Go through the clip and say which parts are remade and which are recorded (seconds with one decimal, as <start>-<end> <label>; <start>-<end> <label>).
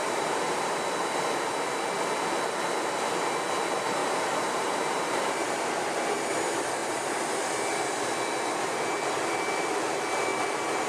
0.0-0.8 remade; 0.8-4.0 recorded; 4.0-5.7 remade; 5.7-6.8 recorded; 6.8-7.3 remade; 7.3-10.9 recorded